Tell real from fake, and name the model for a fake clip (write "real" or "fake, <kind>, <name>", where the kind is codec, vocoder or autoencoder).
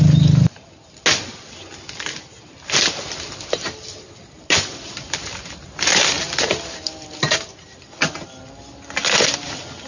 real